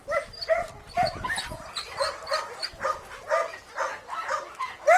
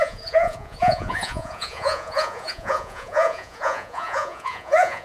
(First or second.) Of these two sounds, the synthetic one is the second